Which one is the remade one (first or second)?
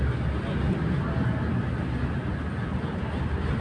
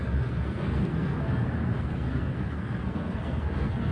second